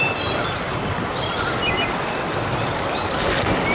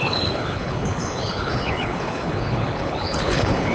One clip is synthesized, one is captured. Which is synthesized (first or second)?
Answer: second